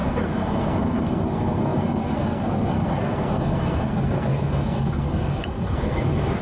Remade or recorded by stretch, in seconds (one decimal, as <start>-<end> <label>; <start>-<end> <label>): 0.0-6.4 remade